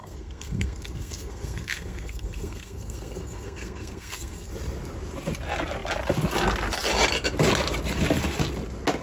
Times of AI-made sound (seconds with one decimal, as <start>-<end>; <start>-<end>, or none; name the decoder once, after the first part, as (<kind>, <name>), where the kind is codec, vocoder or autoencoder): 0.0-4.5 (codec, SNAC)